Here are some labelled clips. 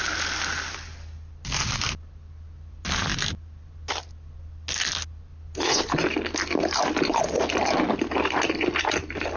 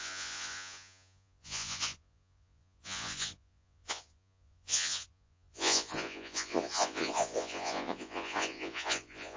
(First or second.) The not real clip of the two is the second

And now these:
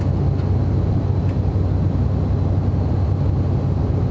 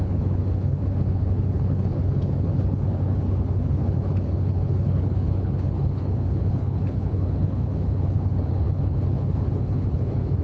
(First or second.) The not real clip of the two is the second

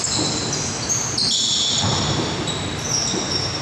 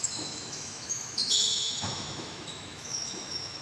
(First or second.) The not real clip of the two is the second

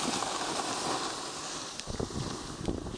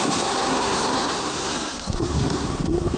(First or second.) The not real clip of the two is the second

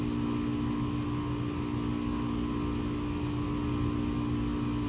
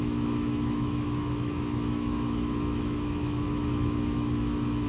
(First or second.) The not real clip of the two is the second